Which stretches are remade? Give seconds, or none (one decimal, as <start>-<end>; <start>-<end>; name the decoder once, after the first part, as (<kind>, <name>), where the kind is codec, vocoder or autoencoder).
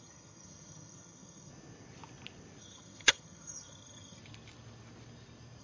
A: 0.0-1.5 (vocoder, HiFi-GAN); 2.6-4.2